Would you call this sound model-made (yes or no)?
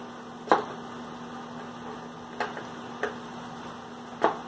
no